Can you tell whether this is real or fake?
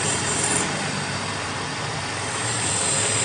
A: real